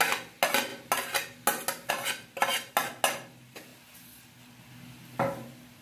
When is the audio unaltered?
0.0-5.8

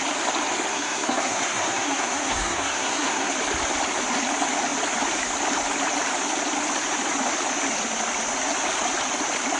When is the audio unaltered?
0.0-0.7; 3.3-9.6

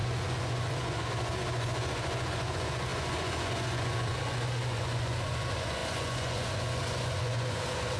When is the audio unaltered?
none

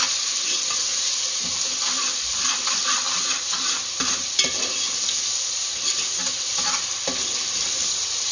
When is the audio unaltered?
0.0-0.9; 3.3-8.3